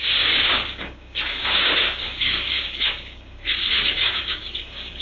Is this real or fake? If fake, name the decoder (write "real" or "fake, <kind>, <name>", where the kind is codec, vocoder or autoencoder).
fake, codec, DAC